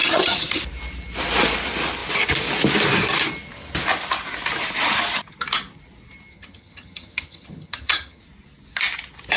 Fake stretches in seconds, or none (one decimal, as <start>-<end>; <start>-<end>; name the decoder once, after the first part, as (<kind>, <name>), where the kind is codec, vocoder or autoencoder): 0.0-0.6 (vocoder, HiFi-GAN); 6.3-8.2